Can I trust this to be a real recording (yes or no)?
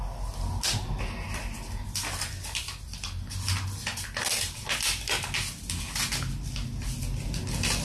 yes